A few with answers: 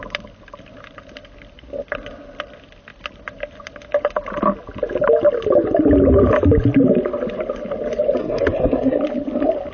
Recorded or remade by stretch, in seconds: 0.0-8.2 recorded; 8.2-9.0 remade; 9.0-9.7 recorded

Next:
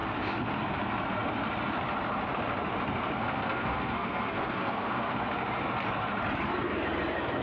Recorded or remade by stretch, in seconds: 0.0-3.2 recorded; 3.2-5.1 remade; 5.1-7.4 recorded